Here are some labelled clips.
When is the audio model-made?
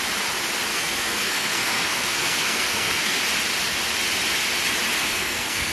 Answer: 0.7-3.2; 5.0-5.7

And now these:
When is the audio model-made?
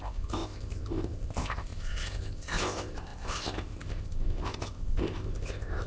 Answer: 0.0-5.9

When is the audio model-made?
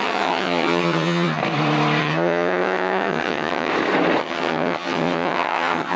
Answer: 0.0-1.4; 2.0-3.7; 4.2-6.0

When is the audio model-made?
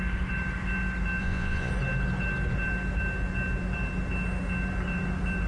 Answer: 1.2-1.7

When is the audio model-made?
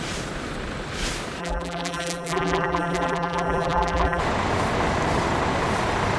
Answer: 1.4-4.2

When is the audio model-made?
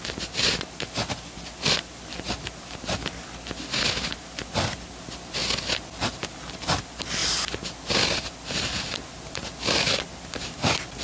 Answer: none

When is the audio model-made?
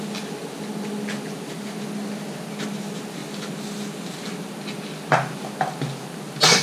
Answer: none